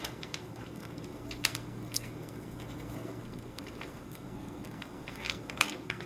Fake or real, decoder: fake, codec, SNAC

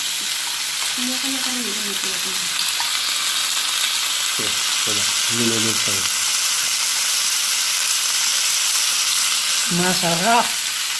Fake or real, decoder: real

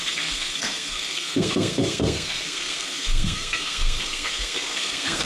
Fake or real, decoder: fake, codec, SNAC